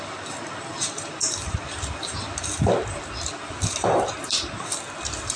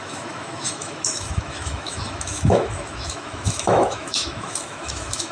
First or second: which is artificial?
second